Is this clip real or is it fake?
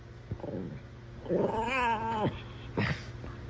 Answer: real